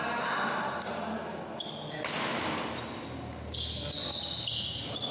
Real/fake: real